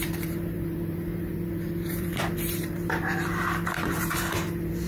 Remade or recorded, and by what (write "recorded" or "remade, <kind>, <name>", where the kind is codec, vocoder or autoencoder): remade, vocoder, BigVGAN v2